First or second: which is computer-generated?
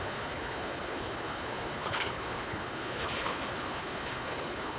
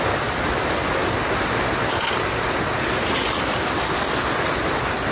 first